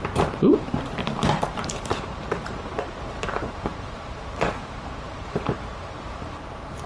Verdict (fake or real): fake